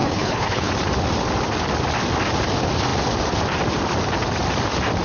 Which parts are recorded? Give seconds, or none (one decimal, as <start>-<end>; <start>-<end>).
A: 0.7-5.0